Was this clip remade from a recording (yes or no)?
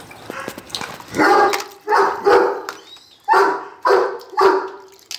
no